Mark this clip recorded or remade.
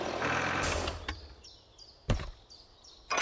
recorded